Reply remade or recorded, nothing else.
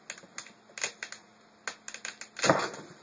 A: recorded